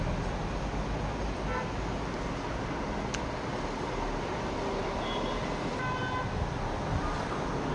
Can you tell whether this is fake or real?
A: real